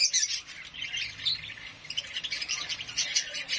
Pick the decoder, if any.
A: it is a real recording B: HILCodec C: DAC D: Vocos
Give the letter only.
A